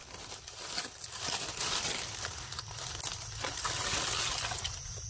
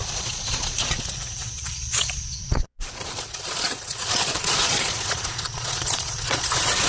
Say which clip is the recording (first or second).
first